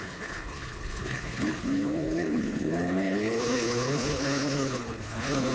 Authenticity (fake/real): fake